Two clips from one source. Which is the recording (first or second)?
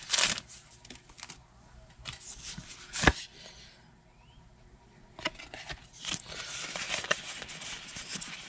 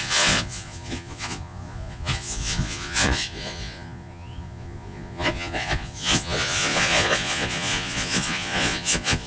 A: first